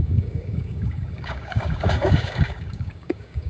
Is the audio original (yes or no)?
no